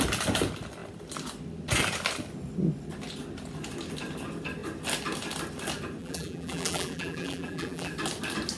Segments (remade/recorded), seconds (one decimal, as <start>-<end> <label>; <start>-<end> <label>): 0.0-6.0 recorded; 6.0-7.9 remade; 7.9-8.6 recorded